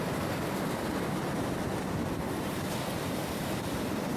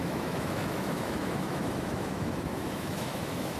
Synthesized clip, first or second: second